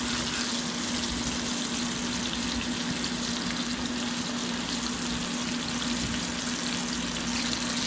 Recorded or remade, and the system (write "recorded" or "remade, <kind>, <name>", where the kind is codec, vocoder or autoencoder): recorded